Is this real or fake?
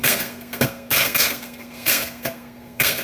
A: fake